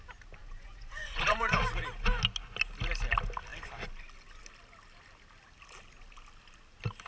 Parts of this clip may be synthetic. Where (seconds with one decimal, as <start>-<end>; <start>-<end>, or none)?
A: 0.4-1.5